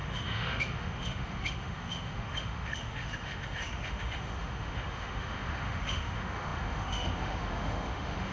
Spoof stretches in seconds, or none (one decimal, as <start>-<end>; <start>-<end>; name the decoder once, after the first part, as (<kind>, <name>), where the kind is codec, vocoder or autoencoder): 0.0-8.3 (autoencoder, DAC-VAE)